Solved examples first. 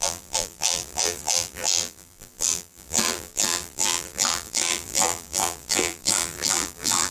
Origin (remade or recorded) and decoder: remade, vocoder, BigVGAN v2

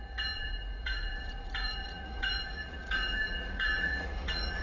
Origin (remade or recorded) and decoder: remade, vocoder, Vocos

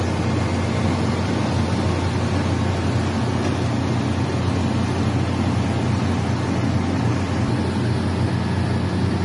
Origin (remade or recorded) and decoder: recorded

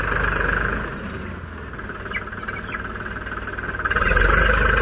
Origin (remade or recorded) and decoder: recorded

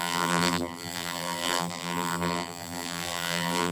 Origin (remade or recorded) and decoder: remade, vocoder, BigVGAN v2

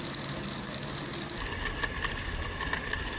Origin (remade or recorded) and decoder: recorded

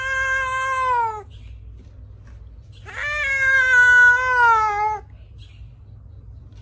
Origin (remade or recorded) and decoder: recorded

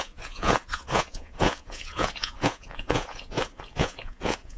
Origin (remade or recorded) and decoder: remade, vocoder, Vocos